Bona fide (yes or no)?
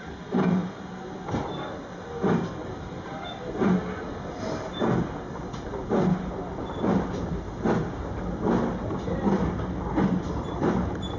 yes